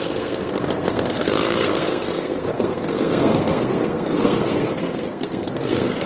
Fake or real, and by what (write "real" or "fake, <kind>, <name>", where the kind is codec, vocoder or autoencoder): fake, codec, SNAC